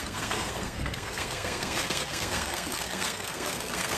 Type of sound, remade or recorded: remade